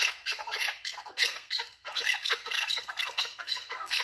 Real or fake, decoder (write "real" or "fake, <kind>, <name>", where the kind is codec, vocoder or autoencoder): fake, codec, SNAC